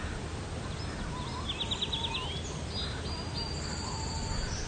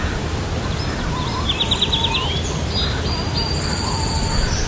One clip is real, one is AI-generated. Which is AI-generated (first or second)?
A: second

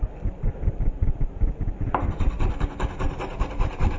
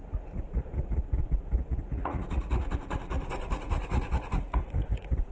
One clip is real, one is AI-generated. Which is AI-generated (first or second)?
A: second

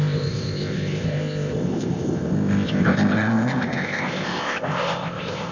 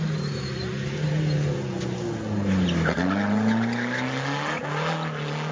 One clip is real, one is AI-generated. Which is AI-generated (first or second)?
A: first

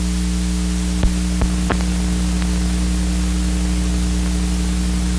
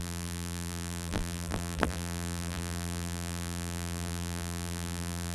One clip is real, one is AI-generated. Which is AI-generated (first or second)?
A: second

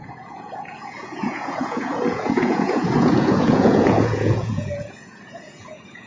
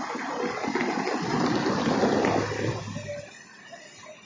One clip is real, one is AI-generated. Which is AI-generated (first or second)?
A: first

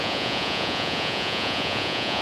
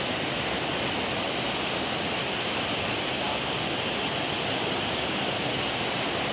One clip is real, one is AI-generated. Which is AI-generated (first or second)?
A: first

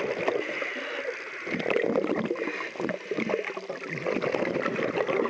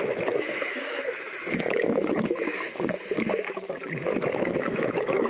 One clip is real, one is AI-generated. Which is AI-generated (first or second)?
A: second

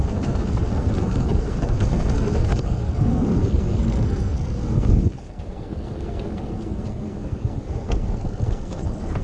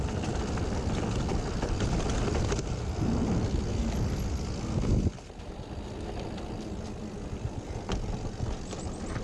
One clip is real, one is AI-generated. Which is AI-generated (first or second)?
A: first